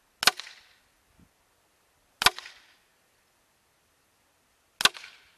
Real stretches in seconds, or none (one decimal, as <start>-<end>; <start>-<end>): 0.0-5.4

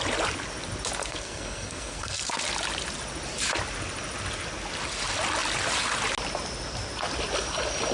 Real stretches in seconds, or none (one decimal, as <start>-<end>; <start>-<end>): 0.0-1.0; 2.4-7.9

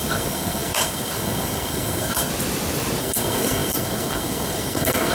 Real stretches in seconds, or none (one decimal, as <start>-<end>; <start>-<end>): 2.3-3.0